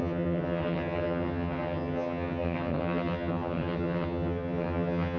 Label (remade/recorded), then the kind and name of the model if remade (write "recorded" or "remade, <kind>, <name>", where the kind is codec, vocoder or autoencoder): remade, vocoder, HiFi-GAN